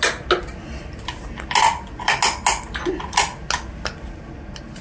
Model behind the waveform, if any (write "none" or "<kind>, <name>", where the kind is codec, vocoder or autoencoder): none